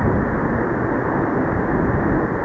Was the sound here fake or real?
real